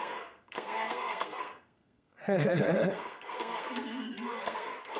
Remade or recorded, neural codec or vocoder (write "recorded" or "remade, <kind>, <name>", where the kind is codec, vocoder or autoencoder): remade, codec, SNAC